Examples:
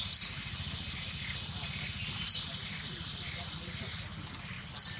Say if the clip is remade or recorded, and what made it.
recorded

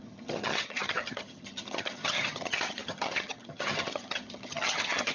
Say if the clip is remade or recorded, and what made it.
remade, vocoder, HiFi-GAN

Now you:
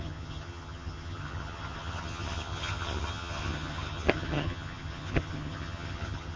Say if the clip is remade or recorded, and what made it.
remade, vocoder, HiFi-GAN